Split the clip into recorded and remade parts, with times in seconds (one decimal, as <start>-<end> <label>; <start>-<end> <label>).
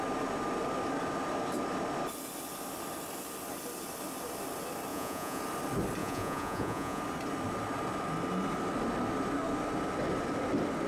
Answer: 0.0-4.9 recorded; 4.9-5.4 remade; 5.4-6.0 recorded; 6.0-7.0 remade; 7.0-10.9 recorded